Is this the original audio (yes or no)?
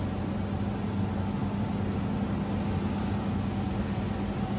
yes